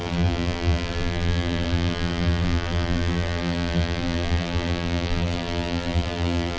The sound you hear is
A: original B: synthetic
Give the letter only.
B